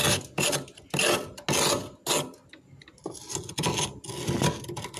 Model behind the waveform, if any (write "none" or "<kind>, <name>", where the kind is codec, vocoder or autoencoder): none